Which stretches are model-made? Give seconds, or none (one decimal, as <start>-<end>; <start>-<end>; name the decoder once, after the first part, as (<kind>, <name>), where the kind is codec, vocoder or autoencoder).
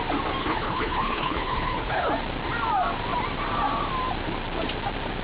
0.4-2.1 (codec, HILCodec)